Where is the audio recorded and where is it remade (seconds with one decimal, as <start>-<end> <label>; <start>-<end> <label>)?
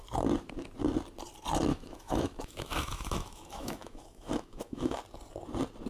0.0-1.7 recorded; 1.7-5.0 remade; 5.0-5.9 recorded